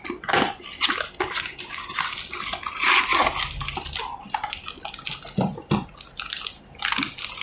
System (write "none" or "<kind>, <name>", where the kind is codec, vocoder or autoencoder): none